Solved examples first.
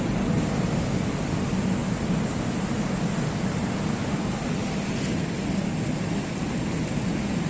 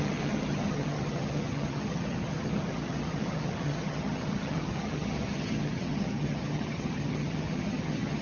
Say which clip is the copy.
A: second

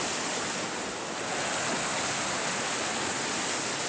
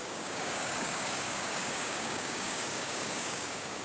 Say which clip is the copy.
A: second